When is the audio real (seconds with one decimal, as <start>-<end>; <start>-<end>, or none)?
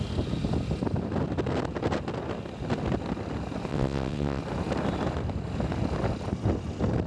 0.0-3.7; 4.4-7.1